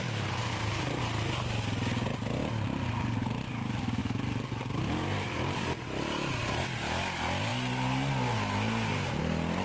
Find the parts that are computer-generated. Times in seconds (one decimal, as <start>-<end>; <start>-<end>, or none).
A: 0.4-1.0; 4.0-6.4